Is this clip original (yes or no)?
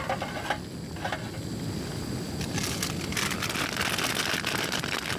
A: yes